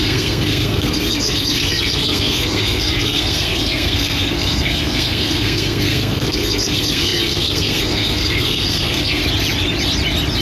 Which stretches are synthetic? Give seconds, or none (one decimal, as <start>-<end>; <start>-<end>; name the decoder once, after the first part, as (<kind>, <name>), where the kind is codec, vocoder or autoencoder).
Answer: 0.0-9.2 (codec, SNAC)